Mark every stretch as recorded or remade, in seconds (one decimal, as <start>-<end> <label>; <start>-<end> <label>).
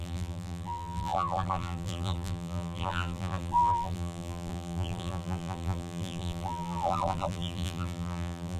0.0-8.6 remade